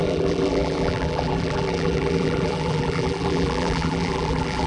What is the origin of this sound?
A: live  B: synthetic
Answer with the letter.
B